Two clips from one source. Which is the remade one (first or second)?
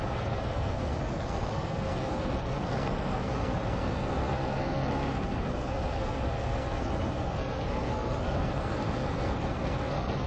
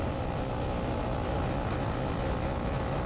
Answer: first